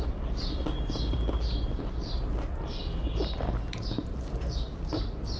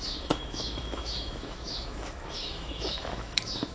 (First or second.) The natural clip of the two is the first